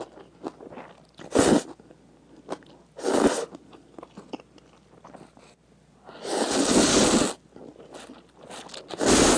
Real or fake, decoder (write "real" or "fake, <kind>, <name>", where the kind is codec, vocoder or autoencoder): real